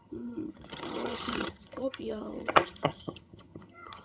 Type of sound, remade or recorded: remade